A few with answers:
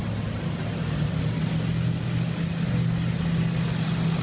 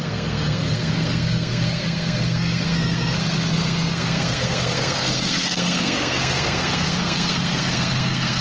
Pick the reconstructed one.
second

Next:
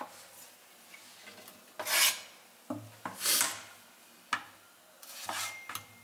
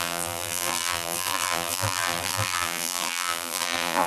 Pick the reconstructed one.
second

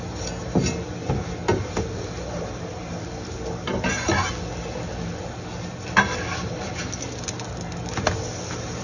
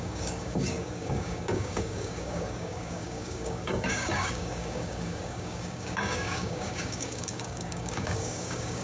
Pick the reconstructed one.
second